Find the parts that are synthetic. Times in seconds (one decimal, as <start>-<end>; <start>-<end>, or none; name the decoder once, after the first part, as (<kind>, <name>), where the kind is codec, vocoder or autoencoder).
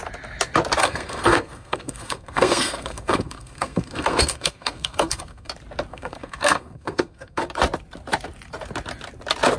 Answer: 0.8-5.5 (codec, SNAC); 5.9-7.4